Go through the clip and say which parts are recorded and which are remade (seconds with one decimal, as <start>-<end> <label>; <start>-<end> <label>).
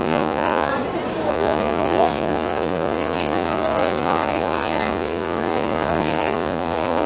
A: 0.0-0.7 remade; 0.7-1.3 recorded; 1.3-7.1 remade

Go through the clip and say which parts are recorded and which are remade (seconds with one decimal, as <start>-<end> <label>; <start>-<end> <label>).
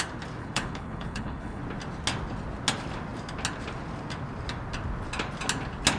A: 0.0-0.4 recorded; 0.4-1.6 remade; 1.6-6.0 recorded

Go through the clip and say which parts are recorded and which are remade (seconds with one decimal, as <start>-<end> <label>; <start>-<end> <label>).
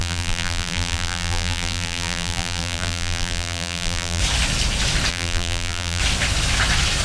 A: 0.0-4.2 remade; 4.2-5.1 recorded; 5.1-6.0 remade; 6.0-7.0 recorded